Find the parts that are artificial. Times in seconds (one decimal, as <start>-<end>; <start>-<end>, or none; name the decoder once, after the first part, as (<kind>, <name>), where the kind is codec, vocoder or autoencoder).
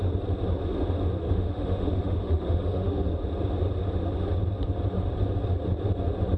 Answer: 1.2-3.0 (autoencoder, DAC-VAE)